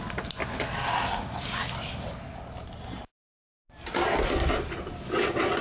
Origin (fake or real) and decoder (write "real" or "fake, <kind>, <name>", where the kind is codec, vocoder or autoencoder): real